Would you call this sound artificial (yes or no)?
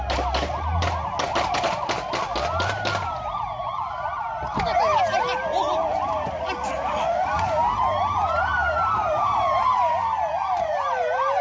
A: no